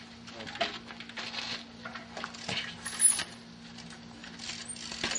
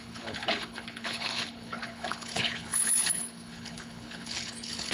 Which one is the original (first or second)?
first